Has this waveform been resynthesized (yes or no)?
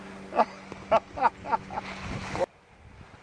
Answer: no